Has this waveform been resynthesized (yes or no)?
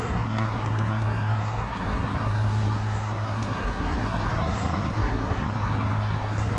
yes